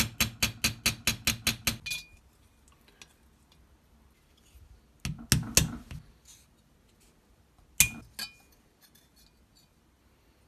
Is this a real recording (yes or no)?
yes